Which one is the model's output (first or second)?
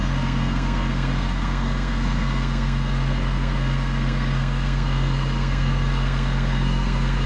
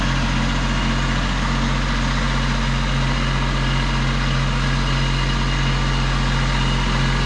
first